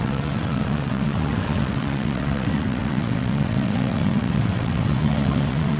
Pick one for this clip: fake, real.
fake